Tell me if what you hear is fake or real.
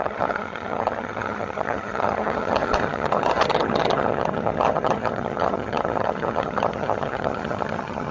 fake